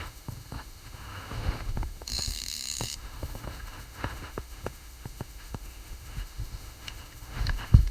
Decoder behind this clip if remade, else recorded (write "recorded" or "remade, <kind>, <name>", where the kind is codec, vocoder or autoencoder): remade, autoencoder, DAC-VAE